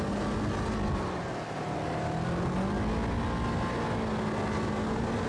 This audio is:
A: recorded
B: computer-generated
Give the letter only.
A